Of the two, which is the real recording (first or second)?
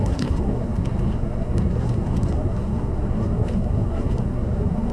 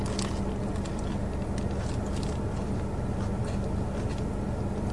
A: second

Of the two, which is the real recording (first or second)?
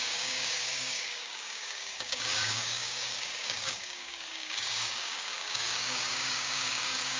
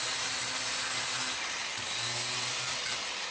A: second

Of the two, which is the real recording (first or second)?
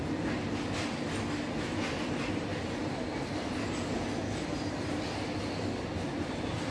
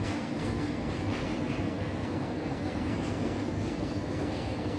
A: first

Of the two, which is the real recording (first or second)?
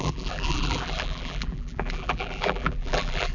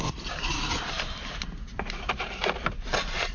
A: second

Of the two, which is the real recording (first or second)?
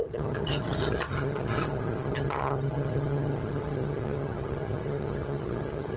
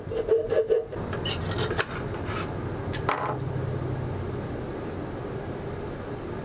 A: second